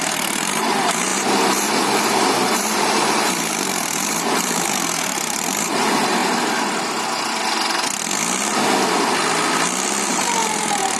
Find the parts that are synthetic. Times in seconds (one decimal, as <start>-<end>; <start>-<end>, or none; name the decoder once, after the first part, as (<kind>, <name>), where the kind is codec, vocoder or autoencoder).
0.0-6.2 (vocoder, BigVGAN v2); 10.1-11.0